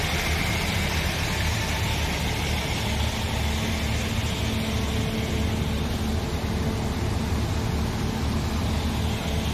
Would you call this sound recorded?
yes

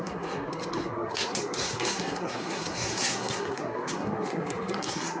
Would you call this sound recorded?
no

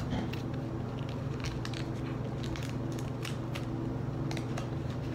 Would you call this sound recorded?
yes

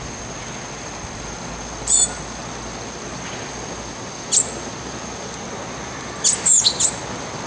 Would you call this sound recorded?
yes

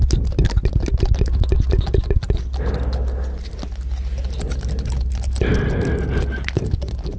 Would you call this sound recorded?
yes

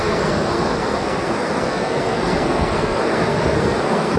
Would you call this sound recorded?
no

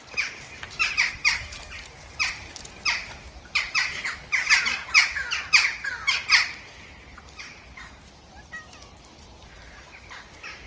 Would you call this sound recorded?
yes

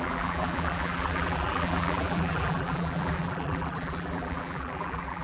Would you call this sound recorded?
no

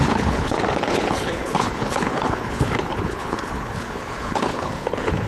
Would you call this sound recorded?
no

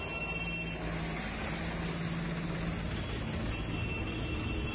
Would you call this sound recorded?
yes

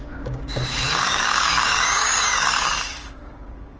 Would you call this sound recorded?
no